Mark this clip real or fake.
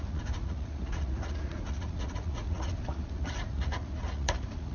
fake